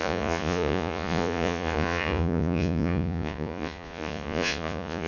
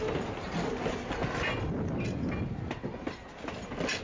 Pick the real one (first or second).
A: second